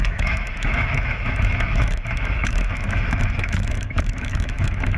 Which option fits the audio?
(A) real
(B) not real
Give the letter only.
B